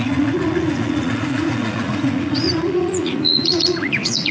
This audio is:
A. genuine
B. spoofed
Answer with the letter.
B